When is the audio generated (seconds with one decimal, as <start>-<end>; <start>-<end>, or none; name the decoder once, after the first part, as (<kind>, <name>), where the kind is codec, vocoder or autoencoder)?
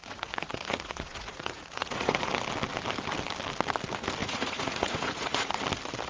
0.0-2.3 (vocoder, Vocos); 4.2-5.6